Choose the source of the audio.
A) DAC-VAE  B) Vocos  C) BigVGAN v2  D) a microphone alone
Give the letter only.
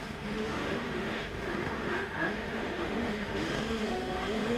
A